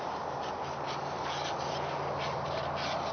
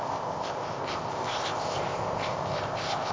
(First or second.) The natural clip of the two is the first